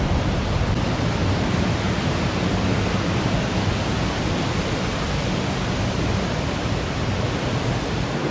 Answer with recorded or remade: recorded